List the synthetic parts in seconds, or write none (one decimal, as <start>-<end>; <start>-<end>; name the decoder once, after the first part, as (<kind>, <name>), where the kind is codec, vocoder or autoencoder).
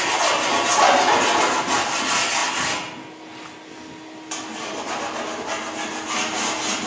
none